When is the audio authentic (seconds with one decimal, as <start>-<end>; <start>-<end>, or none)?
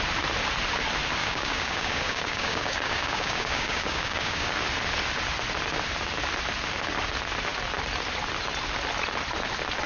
0.0-1.2; 4.5-9.9